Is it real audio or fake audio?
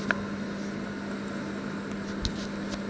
real